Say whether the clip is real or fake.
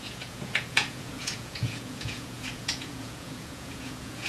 fake